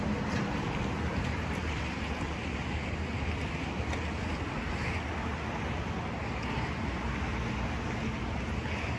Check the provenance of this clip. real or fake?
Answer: real